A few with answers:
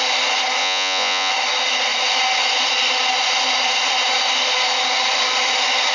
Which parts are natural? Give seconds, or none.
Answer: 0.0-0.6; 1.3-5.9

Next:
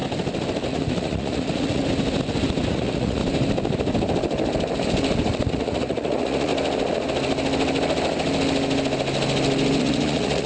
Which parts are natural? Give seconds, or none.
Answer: 0.0-0.7; 1.8-2.7; 3.2-5.5; 6.5-9.8

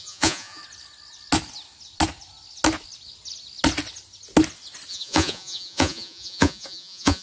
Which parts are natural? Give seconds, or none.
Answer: 0.6-4.9